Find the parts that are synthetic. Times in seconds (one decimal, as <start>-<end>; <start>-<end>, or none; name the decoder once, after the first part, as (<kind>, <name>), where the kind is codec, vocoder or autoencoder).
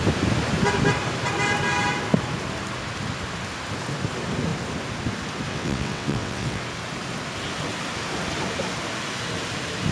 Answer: 5.5-6.6 (vocoder, WaveNeXt)